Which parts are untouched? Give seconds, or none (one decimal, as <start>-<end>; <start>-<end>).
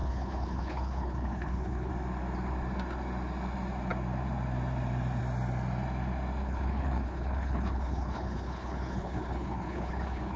1.9-6.4